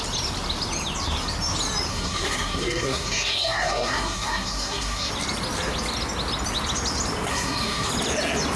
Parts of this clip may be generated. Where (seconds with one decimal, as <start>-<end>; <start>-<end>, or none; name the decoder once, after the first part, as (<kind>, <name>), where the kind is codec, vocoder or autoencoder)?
1.9-5.1 (codec, SNAC); 7.3-7.9